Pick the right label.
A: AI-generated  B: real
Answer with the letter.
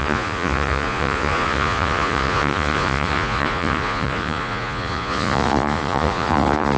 A